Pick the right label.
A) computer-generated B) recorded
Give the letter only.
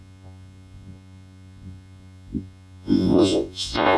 A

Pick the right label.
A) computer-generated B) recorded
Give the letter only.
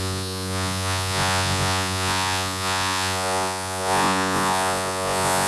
A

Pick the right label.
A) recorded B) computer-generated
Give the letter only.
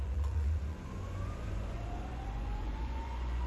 B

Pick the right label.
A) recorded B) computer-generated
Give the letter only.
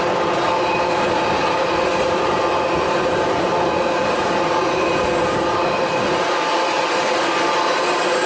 A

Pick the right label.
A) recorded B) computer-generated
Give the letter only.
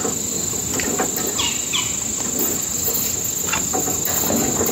A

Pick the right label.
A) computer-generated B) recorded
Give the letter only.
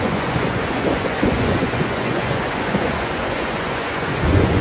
A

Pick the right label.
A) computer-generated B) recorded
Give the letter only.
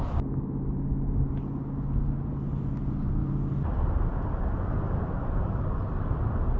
B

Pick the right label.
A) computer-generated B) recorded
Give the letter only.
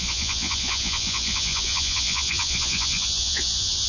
A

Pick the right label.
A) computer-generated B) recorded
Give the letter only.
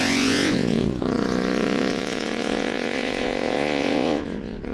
A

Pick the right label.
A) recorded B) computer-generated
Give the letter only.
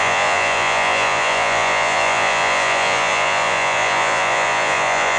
B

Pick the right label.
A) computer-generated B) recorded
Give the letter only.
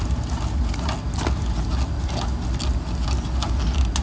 B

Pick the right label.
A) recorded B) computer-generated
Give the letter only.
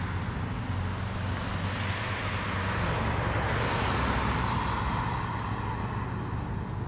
A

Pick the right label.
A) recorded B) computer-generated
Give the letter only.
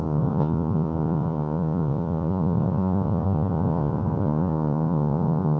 B